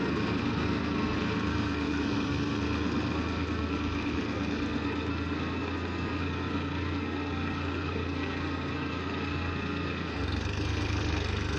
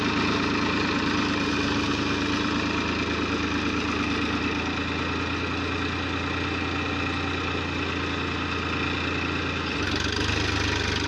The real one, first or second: second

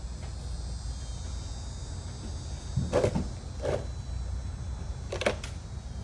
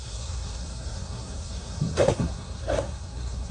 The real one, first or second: first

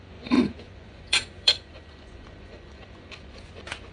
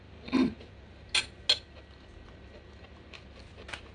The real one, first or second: second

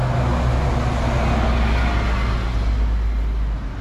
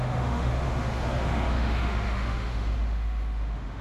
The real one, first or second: first